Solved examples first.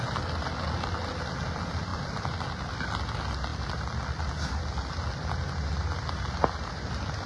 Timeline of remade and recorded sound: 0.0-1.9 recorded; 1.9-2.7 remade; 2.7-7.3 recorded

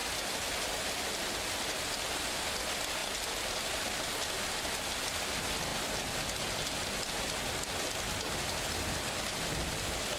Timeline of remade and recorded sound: 0.0-3.0 recorded; 3.0-3.7 remade; 3.7-10.2 recorded

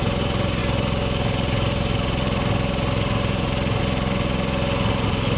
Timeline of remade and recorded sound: 0.0-5.4 recorded

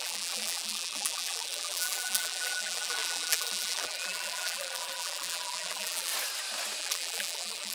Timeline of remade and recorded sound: 0.0-6.1 remade; 6.1-6.8 recorded; 6.8-7.7 remade

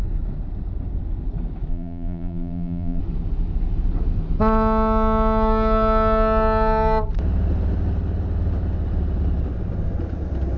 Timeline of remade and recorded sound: 0.0-1.7 recorded; 1.7-3.0 remade; 3.0-10.6 recorded